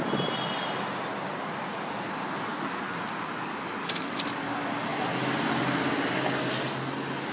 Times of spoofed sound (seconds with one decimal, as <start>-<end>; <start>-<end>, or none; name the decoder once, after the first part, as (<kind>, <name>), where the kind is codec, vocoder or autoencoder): none